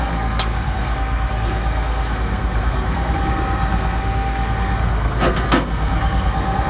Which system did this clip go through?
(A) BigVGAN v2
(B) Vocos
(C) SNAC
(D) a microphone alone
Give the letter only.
C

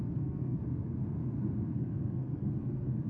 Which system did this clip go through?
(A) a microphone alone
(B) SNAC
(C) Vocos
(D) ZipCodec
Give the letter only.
B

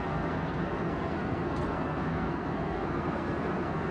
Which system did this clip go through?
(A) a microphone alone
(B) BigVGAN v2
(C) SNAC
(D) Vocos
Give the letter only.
C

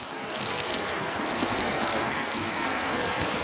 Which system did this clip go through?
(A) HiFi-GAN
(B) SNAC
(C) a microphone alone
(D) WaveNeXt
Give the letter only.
B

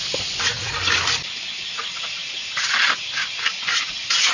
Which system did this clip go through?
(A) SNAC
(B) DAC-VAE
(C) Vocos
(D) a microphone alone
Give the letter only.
D